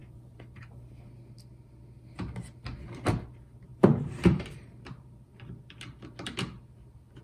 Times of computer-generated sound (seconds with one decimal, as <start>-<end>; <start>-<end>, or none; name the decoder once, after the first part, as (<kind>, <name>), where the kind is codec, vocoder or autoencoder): 0.0-0.7 (vocoder, BigVGAN v2); 3.7-5.3